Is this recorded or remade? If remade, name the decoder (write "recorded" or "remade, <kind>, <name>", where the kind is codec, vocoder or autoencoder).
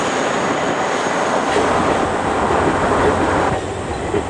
recorded